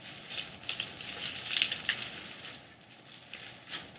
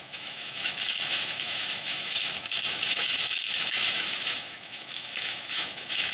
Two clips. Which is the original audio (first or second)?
first